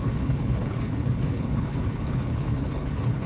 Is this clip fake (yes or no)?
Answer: yes